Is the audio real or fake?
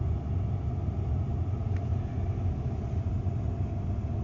real